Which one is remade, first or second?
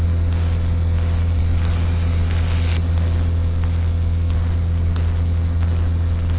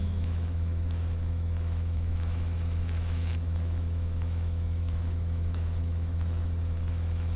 second